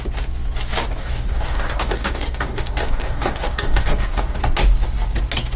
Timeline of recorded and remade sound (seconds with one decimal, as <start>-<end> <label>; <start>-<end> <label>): 0.0-1.0 recorded; 1.0-4.4 remade; 4.4-5.6 recorded